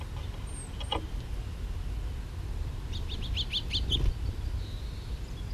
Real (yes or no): yes